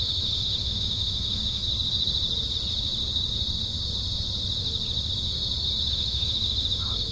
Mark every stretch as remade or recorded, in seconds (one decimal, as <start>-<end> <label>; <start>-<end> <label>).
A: 0.0-1.6 remade; 1.6-5.9 recorded; 5.9-7.1 remade